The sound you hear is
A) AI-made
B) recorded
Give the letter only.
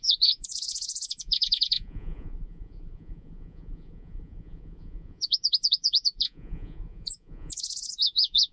A